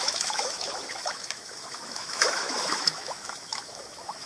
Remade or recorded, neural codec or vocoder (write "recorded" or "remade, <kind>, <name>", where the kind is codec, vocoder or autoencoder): remade, autoencoder, DAC-VAE